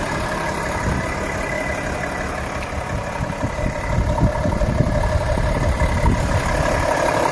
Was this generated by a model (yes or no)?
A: yes